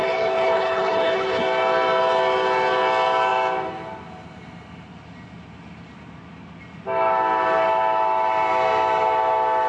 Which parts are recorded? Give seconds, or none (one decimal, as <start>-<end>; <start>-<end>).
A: 1.4-9.7